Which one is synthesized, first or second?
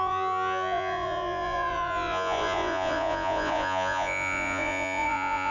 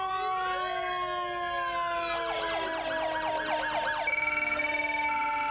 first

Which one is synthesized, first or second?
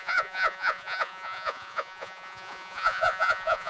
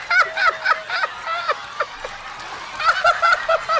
first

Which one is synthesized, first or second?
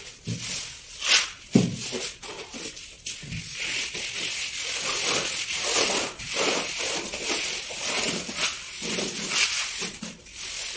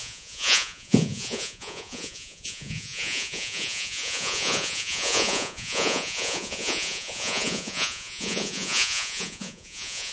second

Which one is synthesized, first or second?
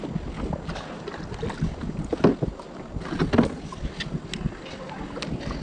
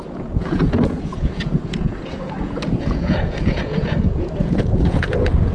second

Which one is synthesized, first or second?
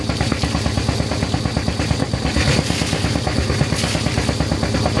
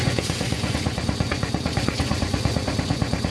second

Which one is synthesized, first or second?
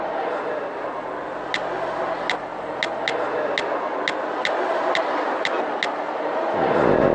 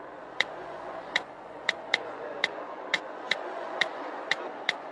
second